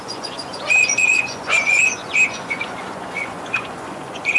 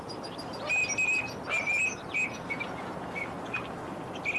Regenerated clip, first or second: first